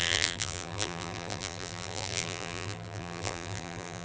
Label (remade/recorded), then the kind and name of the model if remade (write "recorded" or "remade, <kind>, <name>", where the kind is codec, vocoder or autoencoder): remade, vocoder, BigVGAN v2